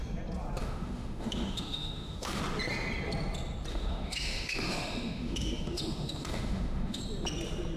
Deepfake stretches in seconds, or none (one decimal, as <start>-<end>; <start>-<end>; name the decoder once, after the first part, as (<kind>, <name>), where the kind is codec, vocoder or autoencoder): 0.6-2.4 (autoencoder, DAC-VAE); 3.7-7.0